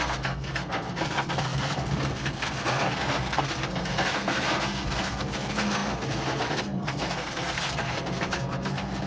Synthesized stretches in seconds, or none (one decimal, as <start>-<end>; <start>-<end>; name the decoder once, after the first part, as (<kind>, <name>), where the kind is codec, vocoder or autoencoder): 0.0-9.1 (codec, SNAC)